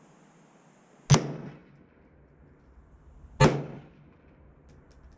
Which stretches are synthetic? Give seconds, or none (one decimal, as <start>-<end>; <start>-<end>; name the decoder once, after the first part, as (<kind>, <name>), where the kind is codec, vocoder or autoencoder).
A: none